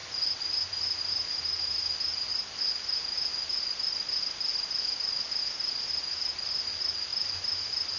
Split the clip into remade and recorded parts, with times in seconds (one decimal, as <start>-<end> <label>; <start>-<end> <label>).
0.0-8.0 recorded